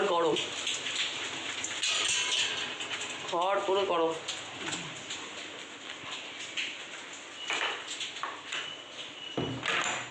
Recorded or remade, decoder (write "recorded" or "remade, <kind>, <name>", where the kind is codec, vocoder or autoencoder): recorded